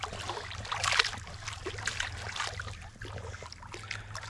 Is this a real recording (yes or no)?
yes